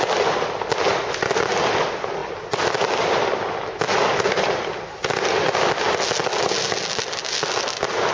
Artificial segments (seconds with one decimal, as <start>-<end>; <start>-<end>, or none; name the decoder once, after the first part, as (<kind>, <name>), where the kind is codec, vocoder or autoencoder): 2.2-2.7 (vocoder, BigVGAN v2)